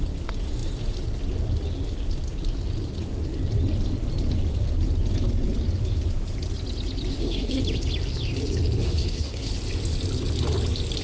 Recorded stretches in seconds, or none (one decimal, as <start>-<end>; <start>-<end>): 0.0-7.1; 7.6-8.8; 9.5-11.0